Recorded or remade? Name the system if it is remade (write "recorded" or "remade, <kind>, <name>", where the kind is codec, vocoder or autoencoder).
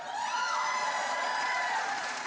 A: remade, vocoder, Vocos